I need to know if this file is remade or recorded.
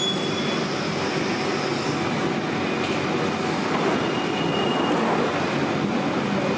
recorded